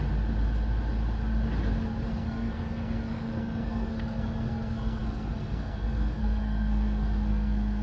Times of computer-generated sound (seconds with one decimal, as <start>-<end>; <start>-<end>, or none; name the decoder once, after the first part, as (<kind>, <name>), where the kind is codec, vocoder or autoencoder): 2.1-7.8 (codec, SNAC)